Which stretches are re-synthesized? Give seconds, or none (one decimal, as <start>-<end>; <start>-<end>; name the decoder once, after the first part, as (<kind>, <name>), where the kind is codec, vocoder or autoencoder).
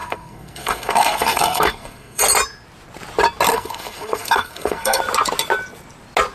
0.0-2.2 (codec, SNAC); 3.5-5.0